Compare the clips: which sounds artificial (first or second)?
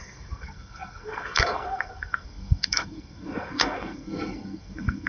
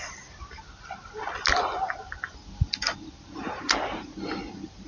first